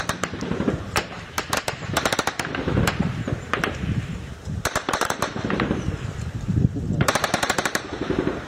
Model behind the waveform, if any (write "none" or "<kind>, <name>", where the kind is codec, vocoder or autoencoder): vocoder, BigVGAN v2